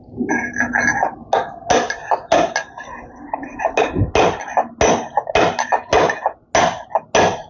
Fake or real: real